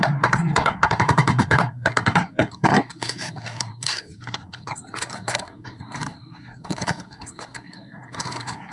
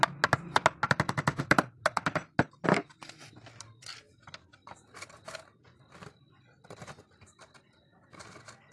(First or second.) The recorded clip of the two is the second